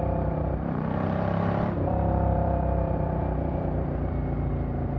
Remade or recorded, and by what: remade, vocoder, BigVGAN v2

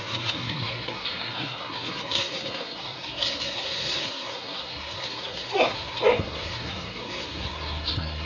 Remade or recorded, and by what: remade, codec, SNAC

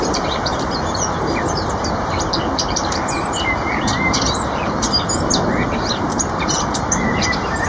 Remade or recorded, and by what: remade, vocoder, BigVGAN v2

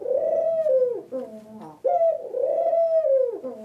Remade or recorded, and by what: recorded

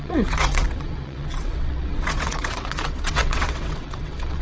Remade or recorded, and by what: remade, vocoder, WaveNeXt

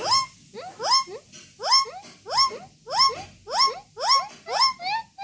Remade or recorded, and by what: recorded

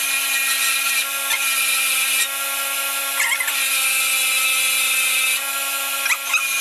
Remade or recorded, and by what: recorded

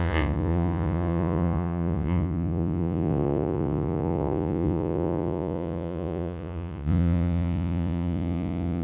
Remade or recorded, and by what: remade, vocoder, Vocos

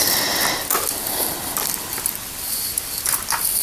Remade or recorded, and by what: recorded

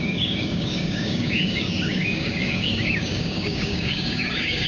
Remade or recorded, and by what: remade, codec, DAC